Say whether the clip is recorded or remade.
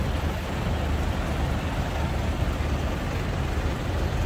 recorded